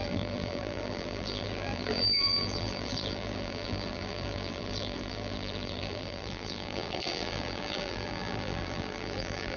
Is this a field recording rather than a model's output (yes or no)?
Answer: no